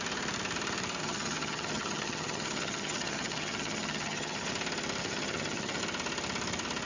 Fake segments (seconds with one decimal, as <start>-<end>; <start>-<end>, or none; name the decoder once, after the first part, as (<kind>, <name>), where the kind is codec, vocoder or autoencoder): 1.0-4.5 (vocoder, HiFi-GAN); 5.0-5.8

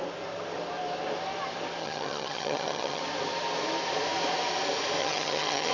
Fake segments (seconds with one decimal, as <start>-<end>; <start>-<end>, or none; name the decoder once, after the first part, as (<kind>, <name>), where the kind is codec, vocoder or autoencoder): 1.8-3.0 (vocoder, HiFi-GAN); 5.0-5.7

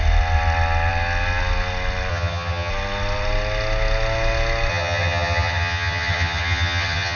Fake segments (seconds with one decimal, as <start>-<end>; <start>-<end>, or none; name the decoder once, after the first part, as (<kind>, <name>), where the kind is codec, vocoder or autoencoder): 2.1-2.7 (vocoder, HiFi-GAN); 4.7-7.2

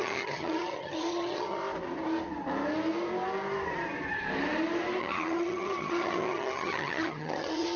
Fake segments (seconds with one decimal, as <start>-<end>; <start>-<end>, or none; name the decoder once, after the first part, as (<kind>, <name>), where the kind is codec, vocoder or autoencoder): 0.0-1.6 (vocoder, HiFi-GAN); 5.0-7.8

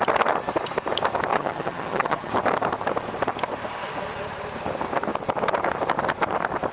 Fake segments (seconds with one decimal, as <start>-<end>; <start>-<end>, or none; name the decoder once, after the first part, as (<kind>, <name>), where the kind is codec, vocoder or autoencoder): 1.3-2.3 (vocoder, HiFi-GAN)

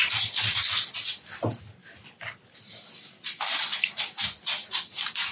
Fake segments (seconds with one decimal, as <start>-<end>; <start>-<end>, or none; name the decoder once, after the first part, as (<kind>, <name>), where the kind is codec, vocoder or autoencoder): none